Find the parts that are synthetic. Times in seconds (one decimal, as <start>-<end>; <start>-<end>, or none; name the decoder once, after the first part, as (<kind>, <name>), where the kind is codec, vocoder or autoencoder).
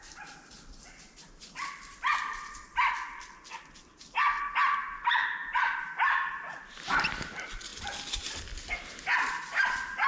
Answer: none